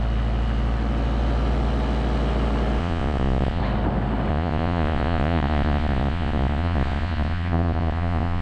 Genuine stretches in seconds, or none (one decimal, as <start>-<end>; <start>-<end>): 0.0-2.8; 3.6-4.3